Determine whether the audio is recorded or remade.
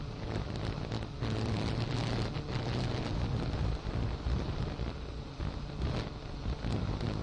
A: recorded